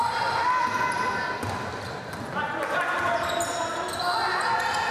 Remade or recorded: recorded